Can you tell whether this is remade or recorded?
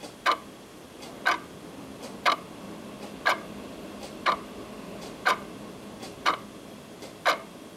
recorded